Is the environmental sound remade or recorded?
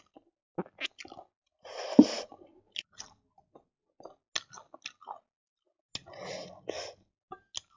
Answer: recorded